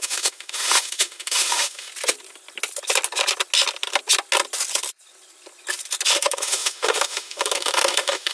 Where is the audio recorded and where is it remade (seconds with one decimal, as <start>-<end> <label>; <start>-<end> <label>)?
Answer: 0.0-1.9 remade; 1.9-6.1 recorded; 6.1-8.3 remade